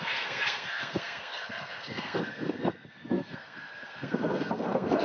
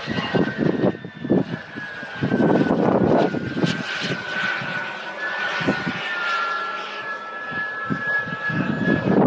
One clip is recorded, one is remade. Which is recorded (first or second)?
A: second